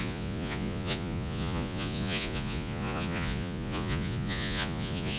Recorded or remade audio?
remade